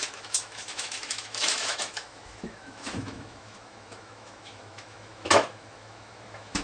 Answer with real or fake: fake